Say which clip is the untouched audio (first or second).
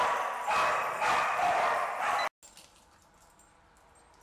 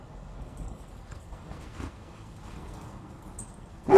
first